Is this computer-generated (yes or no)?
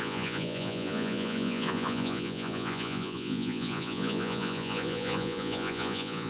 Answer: yes